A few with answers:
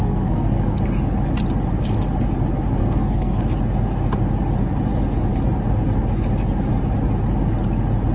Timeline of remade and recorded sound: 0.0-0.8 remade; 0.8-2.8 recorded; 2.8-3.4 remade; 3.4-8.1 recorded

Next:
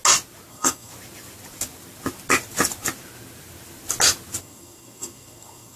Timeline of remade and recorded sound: 0.0-0.5 recorded; 0.5-0.9 remade; 0.9-4.4 recorded; 4.4-5.8 remade

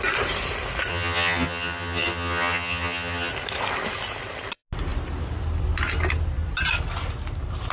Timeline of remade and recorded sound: 0.0-0.9 recorded; 0.9-3.3 remade; 3.3-7.7 recorded

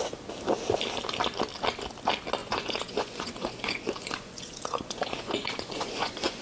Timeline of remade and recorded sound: 0.0-2.4 recorded; 2.4-6.4 remade

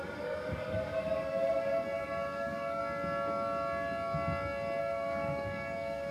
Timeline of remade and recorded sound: 0.0-2.8 remade; 2.8-4.8 recorded; 4.8-6.1 remade

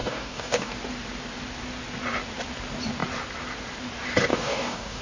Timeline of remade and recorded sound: 0.0-0.7 remade; 0.7-4.3 recorded; 4.3-5.0 remade